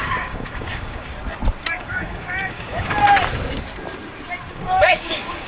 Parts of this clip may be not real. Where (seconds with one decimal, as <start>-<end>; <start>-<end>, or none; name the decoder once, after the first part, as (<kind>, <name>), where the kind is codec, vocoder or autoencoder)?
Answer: 0.0-1.1 (codec, DAC); 1.7-3.0; 4.5-5.5